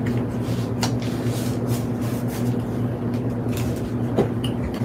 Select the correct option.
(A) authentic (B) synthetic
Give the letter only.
A